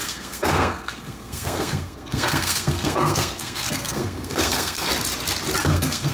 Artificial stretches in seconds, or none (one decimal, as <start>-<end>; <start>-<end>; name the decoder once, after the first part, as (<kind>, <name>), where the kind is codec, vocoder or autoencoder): 0.0-4.9 (codec, SNAC); 5.6-6.1